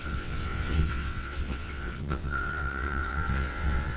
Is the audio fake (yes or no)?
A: yes